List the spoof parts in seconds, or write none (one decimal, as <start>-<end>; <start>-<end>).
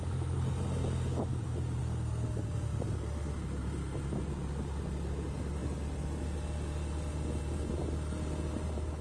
1.3-1.8